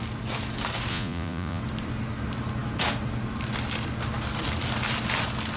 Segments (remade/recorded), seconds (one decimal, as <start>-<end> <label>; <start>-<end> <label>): 0.0-0.9 recorded; 0.9-1.6 remade; 1.6-5.6 recorded